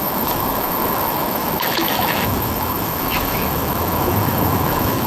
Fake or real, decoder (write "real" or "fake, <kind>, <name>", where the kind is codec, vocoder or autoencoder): fake, autoencoder, DAC-VAE